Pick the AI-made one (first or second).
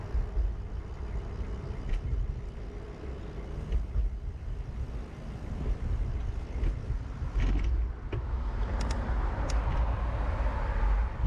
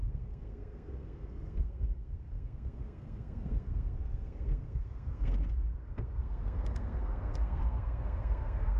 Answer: second